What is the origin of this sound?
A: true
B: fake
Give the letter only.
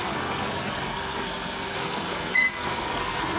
B